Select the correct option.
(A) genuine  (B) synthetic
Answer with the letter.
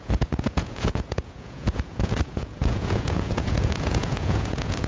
B